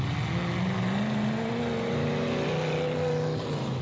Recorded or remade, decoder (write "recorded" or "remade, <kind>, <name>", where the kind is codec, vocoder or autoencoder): recorded